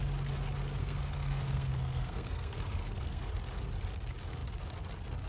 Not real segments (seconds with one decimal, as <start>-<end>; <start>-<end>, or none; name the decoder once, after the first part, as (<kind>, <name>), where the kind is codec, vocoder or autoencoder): 0.8-3.3 (codec, SNAC)